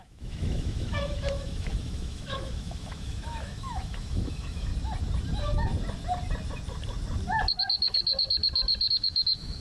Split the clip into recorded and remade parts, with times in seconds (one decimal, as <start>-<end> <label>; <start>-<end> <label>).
0.0-4.7 remade; 4.7-8.9 recorded; 8.9-9.6 remade